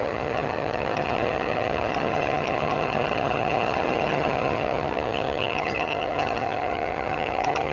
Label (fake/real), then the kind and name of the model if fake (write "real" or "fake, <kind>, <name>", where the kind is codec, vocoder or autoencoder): fake, vocoder, HiFi-GAN